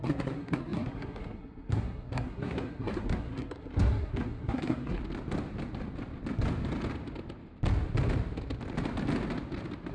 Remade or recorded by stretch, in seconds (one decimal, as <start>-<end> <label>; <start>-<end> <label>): 0.0-5.0 remade; 5.0-9.9 recorded